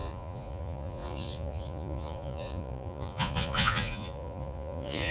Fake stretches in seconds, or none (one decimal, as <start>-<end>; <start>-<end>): 0.0-5.1